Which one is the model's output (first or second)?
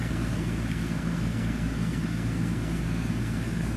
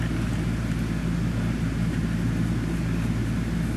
first